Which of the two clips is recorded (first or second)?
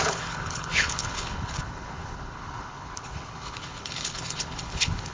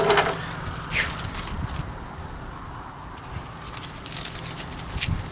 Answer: second